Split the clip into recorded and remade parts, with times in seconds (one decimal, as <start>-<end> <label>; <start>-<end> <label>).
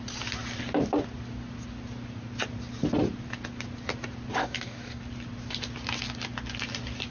0.0-4.4 recorded; 4.4-5.0 remade; 5.0-7.1 recorded